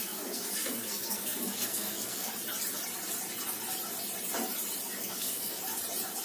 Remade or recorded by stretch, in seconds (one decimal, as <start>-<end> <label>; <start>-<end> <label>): 0.0-2.3 remade; 2.3-5.0 recorded; 5.0-5.6 remade; 5.6-6.2 recorded